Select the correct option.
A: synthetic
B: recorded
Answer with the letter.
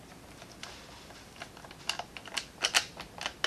B